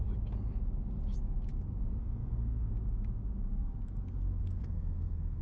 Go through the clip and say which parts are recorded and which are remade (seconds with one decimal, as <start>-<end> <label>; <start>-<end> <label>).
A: 0.0-2.0 recorded; 2.0-2.7 remade; 2.7-4.6 recorded; 4.6-5.4 remade